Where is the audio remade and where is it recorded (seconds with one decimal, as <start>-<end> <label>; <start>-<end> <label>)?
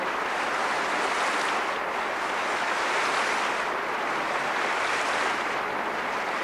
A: 0.0-2.4 recorded; 2.4-2.9 remade; 2.9-6.4 recorded